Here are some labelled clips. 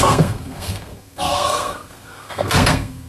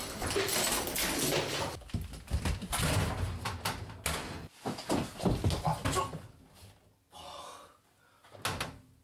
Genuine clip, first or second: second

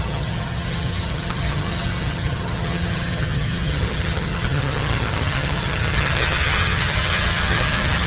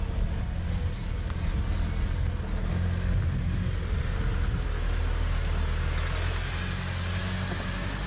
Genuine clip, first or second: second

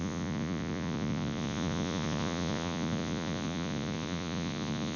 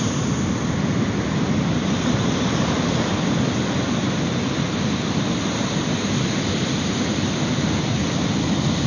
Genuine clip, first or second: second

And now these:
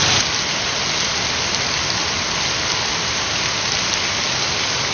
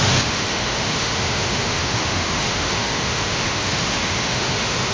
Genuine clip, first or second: first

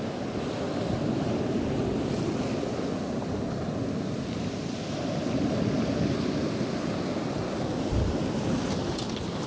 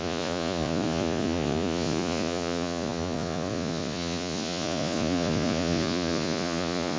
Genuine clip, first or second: first